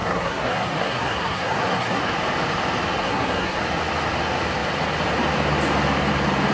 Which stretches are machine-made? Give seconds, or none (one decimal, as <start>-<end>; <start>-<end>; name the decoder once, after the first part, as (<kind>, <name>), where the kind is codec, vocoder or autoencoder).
0.0-2.0 (codec, SNAC); 3.0-3.6